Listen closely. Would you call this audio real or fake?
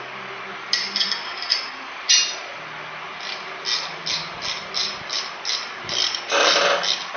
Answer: real